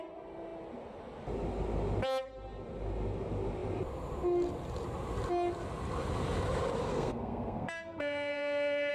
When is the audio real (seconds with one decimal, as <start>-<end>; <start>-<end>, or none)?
0.0-6.9